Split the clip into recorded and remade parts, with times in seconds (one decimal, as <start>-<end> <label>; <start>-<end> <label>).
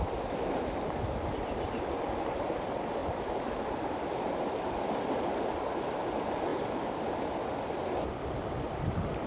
0.0-3.0 recorded; 3.0-4.2 remade; 4.2-6.5 recorded; 6.5-8.4 remade; 8.4-9.3 recorded